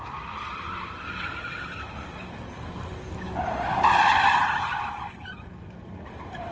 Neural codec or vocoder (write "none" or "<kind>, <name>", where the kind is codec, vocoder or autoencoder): none